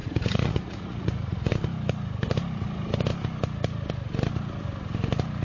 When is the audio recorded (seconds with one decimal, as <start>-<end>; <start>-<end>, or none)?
1.5-5.4